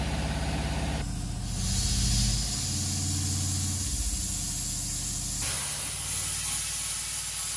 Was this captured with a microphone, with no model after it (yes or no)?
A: yes